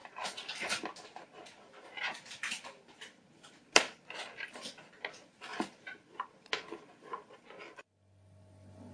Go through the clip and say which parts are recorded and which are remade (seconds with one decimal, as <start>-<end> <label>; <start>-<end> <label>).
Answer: 0.0-8.9 recorded